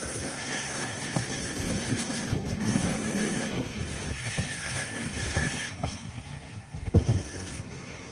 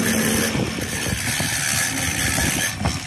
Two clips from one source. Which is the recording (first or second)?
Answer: second